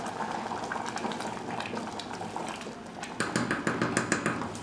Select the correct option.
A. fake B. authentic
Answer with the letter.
B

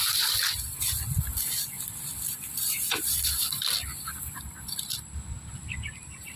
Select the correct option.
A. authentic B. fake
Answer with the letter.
B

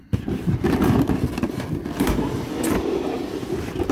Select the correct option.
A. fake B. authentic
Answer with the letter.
A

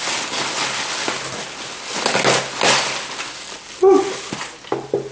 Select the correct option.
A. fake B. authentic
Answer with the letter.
B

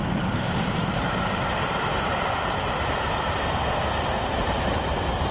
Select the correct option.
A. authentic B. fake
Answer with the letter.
B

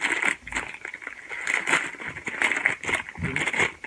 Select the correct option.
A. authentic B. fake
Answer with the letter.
A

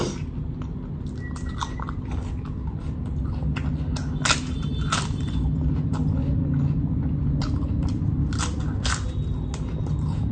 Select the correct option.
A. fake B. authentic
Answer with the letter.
B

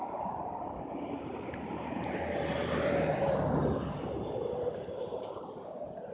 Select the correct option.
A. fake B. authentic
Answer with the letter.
A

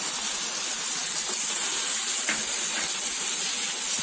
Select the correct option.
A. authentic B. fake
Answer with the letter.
A